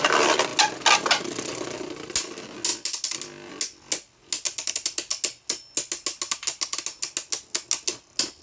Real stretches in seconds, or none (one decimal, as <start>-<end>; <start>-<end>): 0.0-8.4